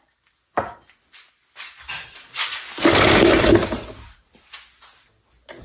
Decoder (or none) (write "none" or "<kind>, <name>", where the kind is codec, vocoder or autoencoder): none